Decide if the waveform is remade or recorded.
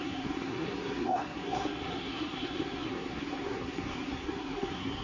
remade